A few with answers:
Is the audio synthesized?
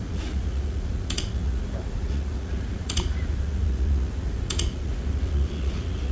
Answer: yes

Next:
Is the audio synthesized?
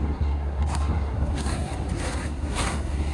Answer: yes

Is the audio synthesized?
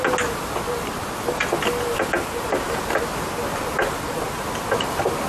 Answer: no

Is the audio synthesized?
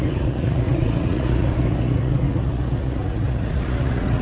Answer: yes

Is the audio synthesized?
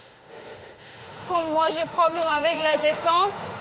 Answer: yes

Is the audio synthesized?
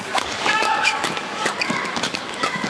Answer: yes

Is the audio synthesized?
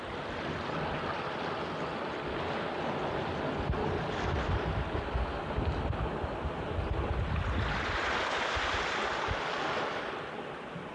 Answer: no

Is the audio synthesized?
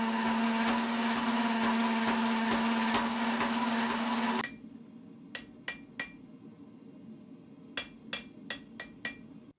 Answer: no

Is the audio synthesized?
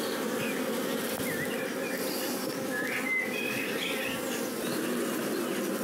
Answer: no